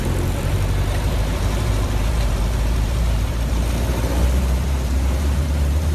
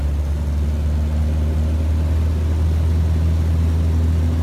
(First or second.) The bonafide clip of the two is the second